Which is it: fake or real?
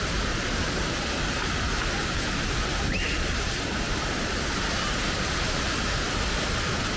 real